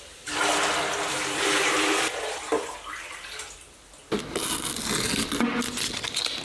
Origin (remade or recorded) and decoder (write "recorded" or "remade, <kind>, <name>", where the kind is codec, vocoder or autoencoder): recorded